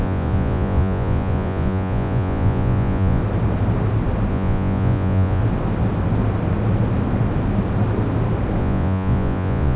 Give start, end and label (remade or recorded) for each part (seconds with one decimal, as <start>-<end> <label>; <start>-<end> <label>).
0.0-3.2 remade; 3.2-4.3 recorded; 4.3-5.4 remade; 5.4-8.6 recorded; 8.6-9.8 remade